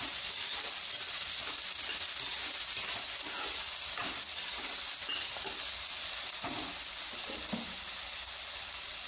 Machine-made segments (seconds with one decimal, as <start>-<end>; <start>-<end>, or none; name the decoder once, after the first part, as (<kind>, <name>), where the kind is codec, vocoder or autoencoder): none